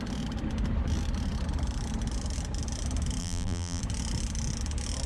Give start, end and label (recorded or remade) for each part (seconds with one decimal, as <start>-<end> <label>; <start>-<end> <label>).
0.0-3.2 recorded; 3.2-3.8 remade; 3.8-5.1 recorded